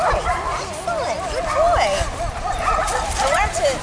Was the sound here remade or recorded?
recorded